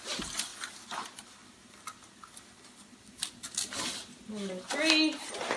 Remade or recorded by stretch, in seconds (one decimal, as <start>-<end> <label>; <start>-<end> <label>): 0.0-5.6 recorded